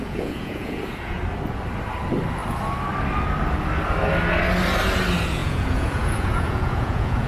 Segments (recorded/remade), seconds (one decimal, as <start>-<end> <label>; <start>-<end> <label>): 0.0-1.2 remade; 1.2-5.4 recorded; 5.4-7.3 remade